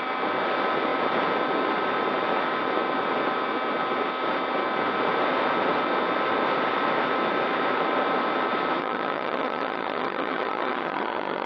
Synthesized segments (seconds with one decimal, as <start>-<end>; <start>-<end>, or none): 8.8-11.5

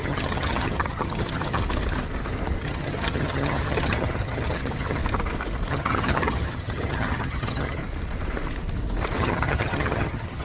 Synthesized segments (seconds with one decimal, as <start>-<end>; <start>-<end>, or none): 0.0-1.6; 2.6-5.0; 5.7-7.8; 9.2-10.4

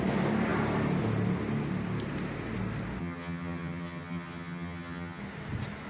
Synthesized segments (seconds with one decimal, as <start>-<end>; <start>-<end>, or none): 3.0-5.2

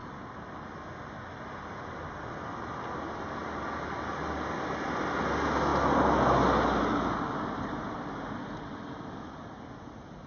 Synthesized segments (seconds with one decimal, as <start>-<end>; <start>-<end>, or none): none

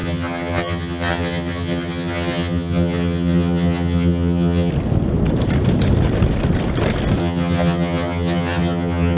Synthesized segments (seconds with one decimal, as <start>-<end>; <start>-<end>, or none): 0.0-4.7; 7.2-9.2

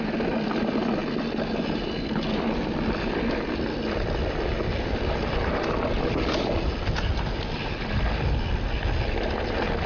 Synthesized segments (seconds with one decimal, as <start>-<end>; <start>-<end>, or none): none

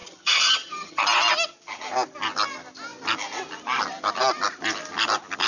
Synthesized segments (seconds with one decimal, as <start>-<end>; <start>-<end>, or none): 0.0-1.0

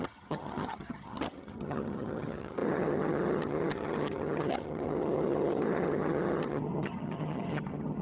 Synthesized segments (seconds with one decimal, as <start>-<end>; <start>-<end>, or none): 0.0-8.0